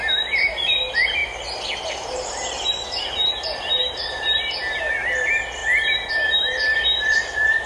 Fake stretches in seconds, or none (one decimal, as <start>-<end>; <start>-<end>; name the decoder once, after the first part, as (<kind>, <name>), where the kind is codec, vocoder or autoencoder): 0.0-1.2 (vocoder, BigVGAN v2); 1.9-5.6; 6.1-7.7